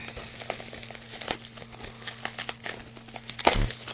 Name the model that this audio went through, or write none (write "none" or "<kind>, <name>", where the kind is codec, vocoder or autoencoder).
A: none